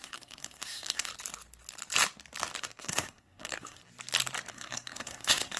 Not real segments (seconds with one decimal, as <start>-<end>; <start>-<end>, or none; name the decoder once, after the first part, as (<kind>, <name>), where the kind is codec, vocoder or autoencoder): 0.0-1.1 (codec, SNAC); 2.6-3.8; 4.5-5.6